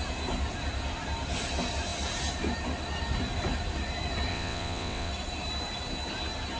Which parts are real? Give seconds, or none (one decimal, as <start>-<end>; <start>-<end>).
0.0-4.3; 5.1-6.6